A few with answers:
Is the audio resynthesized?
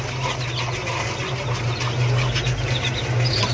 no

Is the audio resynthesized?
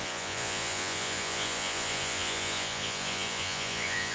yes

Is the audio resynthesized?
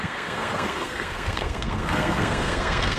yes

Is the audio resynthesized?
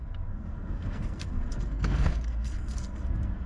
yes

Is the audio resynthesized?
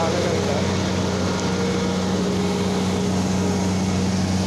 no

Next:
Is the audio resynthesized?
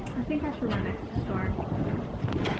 no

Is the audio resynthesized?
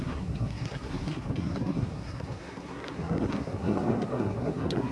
yes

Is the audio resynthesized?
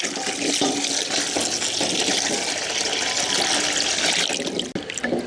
no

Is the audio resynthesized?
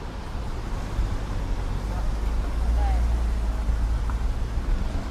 no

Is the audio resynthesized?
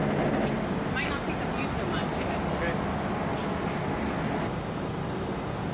no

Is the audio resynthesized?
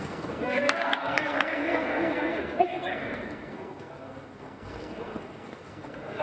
yes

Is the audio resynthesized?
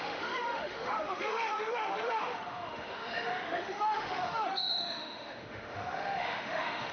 yes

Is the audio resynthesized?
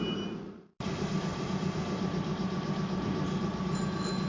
no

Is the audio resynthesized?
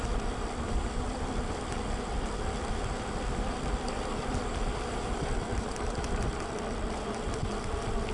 yes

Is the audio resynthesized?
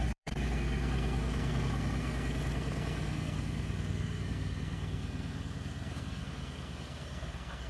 yes